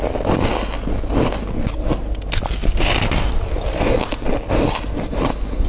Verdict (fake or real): real